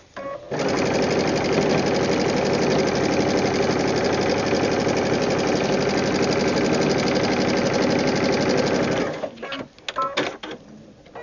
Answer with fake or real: real